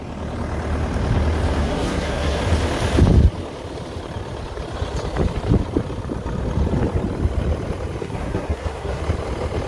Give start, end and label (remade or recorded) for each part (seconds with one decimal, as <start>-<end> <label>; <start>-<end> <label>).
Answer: 0.0-1.6 recorded; 1.6-2.4 remade; 2.4-8.0 recorded; 8.0-9.0 remade; 9.0-9.7 recorded